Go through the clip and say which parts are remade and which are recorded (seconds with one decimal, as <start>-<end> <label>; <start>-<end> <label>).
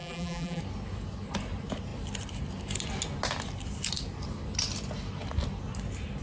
0.0-0.6 remade; 0.6-6.2 recorded